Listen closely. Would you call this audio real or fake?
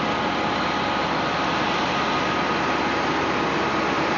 real